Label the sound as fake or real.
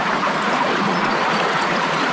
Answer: fake